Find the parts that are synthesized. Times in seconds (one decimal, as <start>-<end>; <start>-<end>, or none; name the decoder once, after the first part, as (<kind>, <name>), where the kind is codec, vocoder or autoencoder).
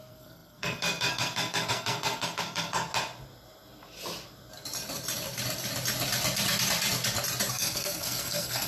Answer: 0.0-2.9 (codec, SNAC); 7.5-8.7